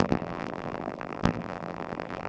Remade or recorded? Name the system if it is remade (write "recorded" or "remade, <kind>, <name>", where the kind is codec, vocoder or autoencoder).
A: remade, vocoder, BigVGAN v2